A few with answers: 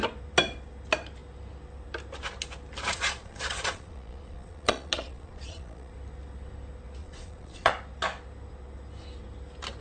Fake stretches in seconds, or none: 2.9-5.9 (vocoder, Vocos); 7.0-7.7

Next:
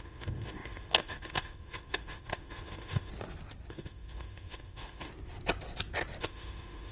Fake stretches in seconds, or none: 0.0-3.1 (autoencoder, DAC-VAE); 3.7-5.1; 6.2-6.9

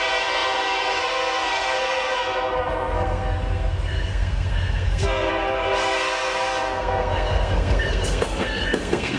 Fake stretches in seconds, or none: 0.0-9.2 (codec, SNAC)

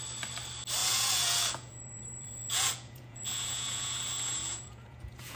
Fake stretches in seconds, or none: 0.8-4.0 (vocoder, Vocos); 4.4-5.4